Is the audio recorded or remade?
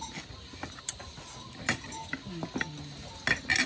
recorded